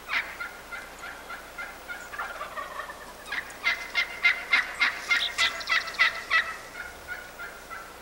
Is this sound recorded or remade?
remade